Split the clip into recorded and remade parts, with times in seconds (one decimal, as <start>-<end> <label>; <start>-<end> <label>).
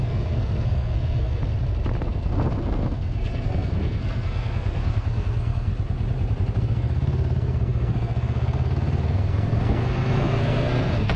0.0-1.4 remade; 1.4-2.0 recorded; 2.0-5.7 remade; 5.7-6.6 recorded; 6.6-11.2 remade